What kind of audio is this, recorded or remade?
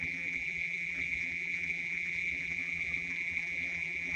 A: remade